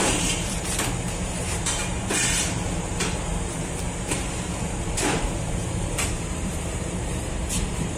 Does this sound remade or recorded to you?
remade